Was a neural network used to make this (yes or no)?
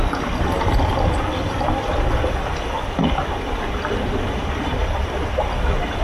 no